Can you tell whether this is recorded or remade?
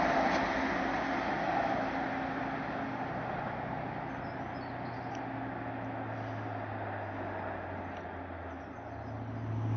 recorded